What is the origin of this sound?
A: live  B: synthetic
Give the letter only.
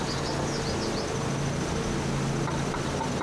A